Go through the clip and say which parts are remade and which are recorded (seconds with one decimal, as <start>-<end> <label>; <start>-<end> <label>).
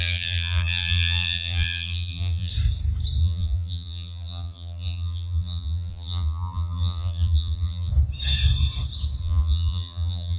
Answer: 0.0-2.5 remade; 2.5-3.2 recorded; 3.2-7.9 remade; 7.9-9.2 recorded; 9.2-10.4 remade